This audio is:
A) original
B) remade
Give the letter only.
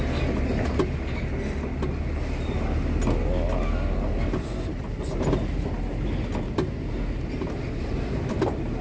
A